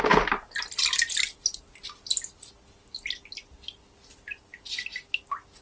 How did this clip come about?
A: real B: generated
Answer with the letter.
A